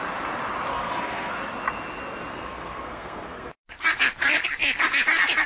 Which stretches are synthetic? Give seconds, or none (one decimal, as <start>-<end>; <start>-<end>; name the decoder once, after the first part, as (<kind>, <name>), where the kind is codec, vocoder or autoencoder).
0.7-1.3 (codec, SNAC); 2.3-3.6